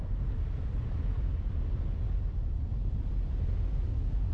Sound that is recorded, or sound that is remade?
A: recorded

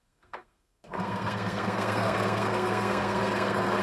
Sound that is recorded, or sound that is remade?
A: remade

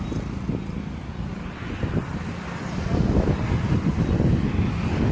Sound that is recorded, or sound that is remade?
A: recorded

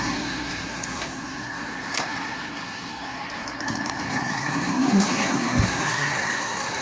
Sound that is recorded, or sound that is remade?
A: remade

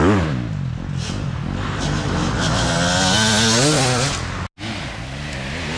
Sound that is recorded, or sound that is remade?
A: recorded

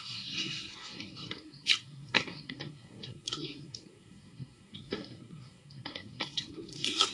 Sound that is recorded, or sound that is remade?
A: remade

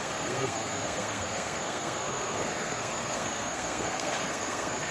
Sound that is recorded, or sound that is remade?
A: remade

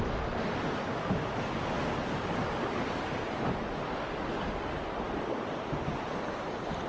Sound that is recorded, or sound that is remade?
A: recorded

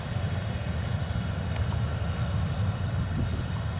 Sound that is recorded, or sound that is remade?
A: recorded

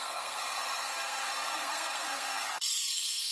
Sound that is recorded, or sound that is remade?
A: remade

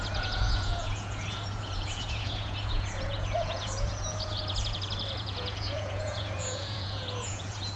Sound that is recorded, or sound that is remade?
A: remade